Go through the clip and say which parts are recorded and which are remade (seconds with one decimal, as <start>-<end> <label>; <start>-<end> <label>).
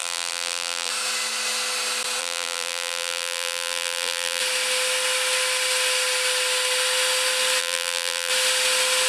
0.0-0.9 remade; 0.9-2.2 recorded; 2.2-4.4 remade; 4.4-7.6 recorded; 7.6-8.3 remade; 8.3-9.1 recorded